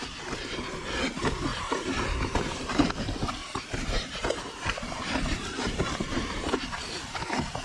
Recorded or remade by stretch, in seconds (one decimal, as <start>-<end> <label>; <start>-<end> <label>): 0.0-1.5 recorded; 1.5-3.0 remade; 3.0-3.4 recorded; 3.4-6.4 remade; 6.4-7.6 recorded